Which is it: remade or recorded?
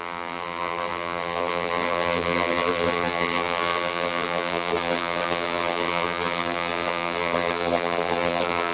remade